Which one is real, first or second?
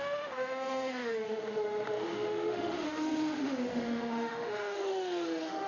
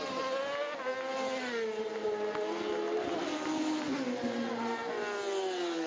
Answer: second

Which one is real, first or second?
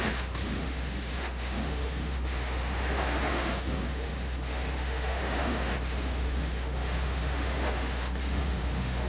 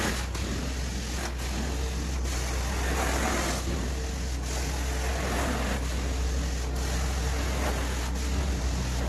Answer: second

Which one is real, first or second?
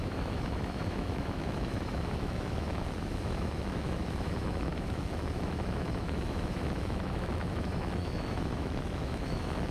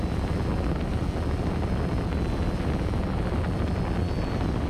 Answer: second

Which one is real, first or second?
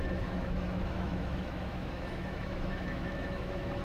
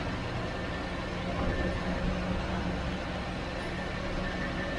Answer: second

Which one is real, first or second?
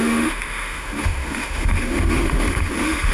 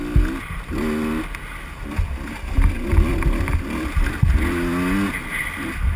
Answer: second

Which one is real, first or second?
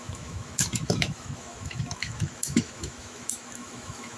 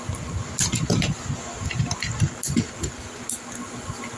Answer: second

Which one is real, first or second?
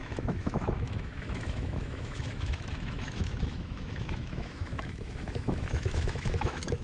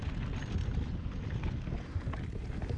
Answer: second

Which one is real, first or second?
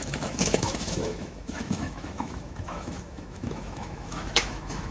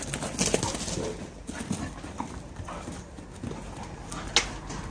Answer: second